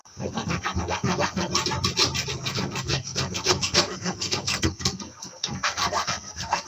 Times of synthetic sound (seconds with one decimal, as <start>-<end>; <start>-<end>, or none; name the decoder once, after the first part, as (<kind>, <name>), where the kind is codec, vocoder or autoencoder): 0.0-1.5 (codec, SNAC); 2.3-6.7